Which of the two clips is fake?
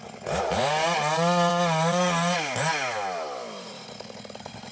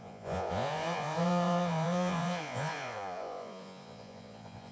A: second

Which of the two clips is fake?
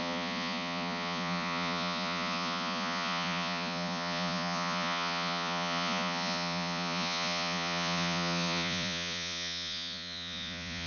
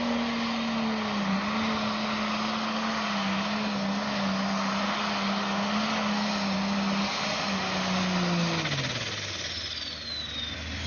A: first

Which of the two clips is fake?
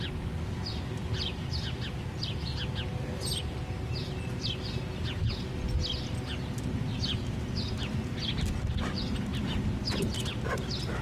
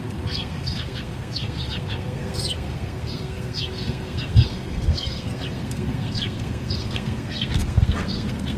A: second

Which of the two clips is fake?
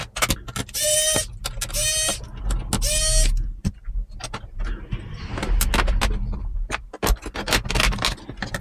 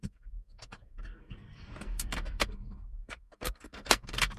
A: second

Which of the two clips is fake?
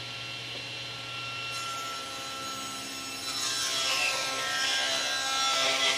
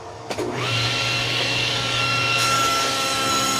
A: second